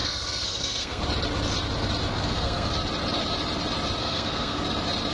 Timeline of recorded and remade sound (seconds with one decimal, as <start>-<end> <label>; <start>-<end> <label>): 0.0-1.0 remade; 1.0-2.1 recorded; 2.1-2.7 remade; 2.7-4.0 recorded; 4.0-4.6 remade; 4.6-5.1 recorded